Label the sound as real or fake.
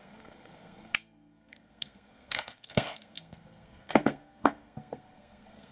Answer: fake